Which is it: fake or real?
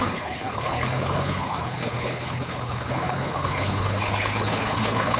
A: fake